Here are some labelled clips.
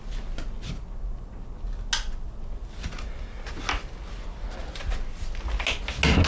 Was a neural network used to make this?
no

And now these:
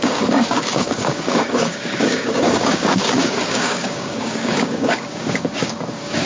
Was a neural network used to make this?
yes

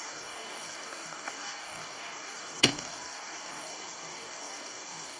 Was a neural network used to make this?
yes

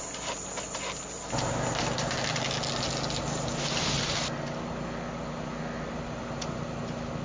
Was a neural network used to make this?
no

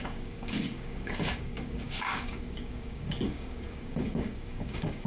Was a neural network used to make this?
yes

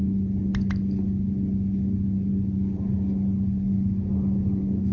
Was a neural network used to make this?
no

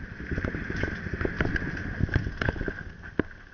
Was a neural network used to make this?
no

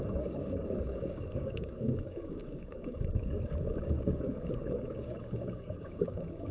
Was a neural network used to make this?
yes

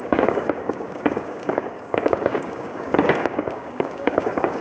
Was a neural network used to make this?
yes